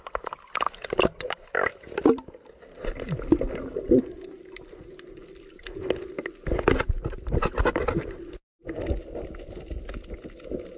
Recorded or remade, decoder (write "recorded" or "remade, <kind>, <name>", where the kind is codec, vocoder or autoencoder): recorded